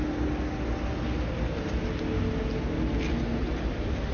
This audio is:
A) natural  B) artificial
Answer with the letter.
A